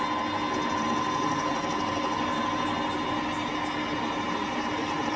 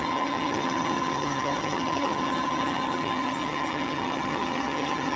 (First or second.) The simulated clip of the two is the second